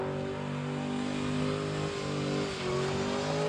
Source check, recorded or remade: recorded